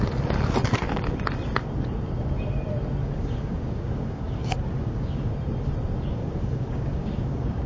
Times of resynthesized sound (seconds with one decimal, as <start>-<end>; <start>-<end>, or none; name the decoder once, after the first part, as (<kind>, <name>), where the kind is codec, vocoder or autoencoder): 3.0-5.3 (codec, DAC); 6.1-7.7